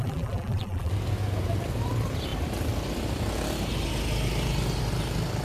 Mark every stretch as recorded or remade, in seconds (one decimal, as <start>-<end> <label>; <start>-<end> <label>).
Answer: 0.0-0.9 remade; 0.9-5.4 recorded